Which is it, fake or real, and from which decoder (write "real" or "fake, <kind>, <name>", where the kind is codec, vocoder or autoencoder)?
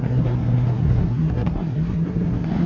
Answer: fake, codec, SNAC